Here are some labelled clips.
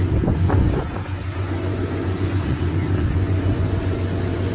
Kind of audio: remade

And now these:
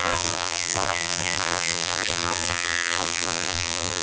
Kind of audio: remade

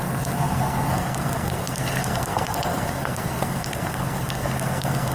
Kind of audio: remade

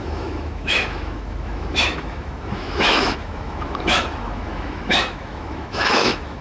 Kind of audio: remade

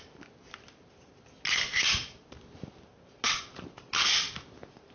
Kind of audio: recorded